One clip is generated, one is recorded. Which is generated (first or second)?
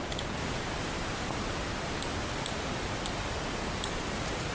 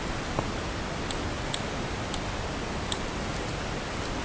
first